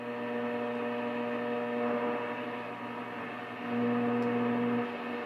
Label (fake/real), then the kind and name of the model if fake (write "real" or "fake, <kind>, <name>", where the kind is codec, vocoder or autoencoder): real